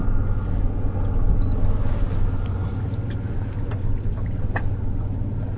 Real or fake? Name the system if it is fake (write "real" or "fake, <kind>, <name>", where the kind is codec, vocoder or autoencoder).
real